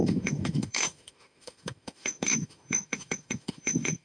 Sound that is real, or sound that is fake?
fake